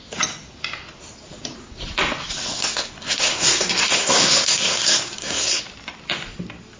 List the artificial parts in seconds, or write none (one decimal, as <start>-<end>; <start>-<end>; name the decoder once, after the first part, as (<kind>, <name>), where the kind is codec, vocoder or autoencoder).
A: 2.5-5.6 (codec, SNAC)